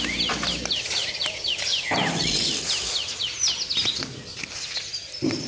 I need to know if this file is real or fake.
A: real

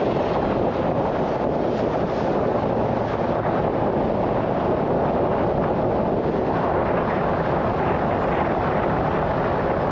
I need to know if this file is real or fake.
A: real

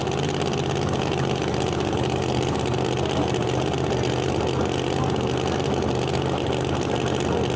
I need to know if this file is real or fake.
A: real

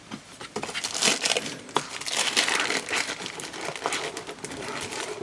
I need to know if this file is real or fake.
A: real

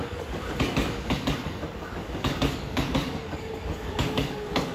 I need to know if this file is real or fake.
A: fake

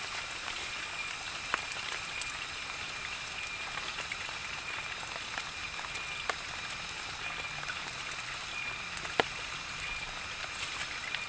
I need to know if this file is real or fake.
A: real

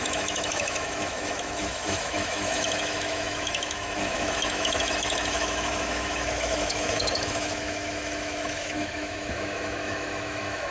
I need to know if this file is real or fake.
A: fake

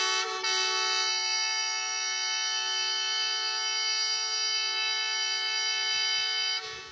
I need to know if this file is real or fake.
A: real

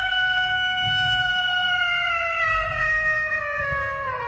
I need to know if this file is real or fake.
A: fake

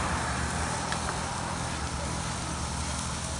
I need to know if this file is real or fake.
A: real